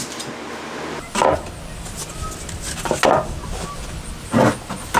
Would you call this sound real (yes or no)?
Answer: yes